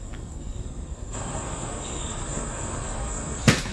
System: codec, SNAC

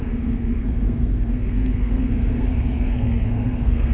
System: codec, SNAC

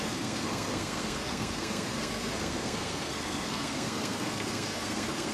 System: codec, SNAC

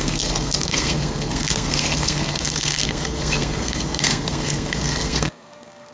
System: codec, SNAC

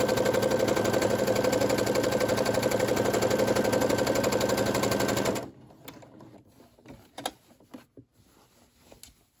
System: none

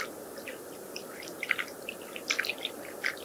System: none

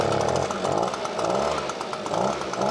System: none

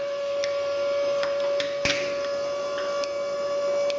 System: none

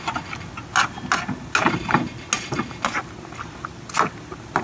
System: none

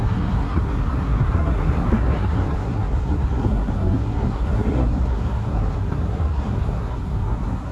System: codec, SNAC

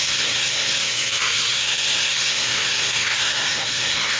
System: codec, SNAC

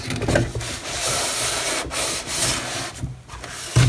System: none